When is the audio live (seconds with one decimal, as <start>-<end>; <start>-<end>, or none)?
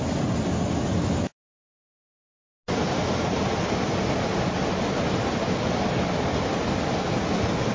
0.0-7.7